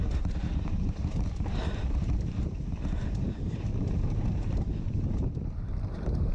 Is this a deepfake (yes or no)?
yes